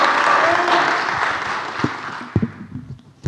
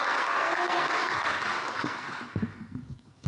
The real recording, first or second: first